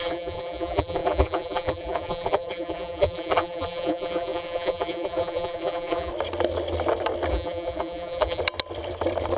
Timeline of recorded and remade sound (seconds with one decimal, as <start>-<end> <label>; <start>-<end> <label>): 0.0-6.1 remade; 6.1-7.3 recorded; 7.3-8.4 remade; 8.4-9.4 recorded